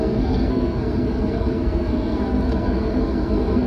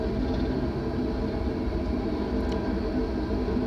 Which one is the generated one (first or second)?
first